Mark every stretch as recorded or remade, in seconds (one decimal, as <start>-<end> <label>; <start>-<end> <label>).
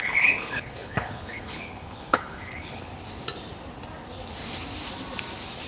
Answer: 0.0-2.9 remade; 2.9-5.7 recorded